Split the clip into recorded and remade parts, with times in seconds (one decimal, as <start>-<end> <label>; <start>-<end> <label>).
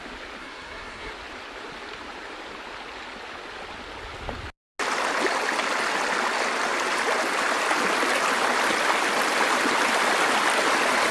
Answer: 0.0-0.4 recorded; 0.4-1.1 remade; 1.1-11.1 recorded